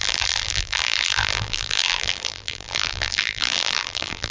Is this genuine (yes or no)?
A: no